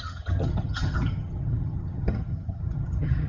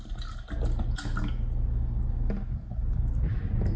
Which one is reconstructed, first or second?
first